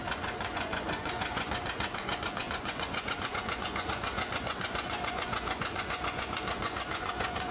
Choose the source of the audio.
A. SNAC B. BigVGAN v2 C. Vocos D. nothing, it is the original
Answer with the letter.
C